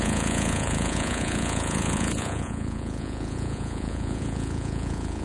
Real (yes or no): no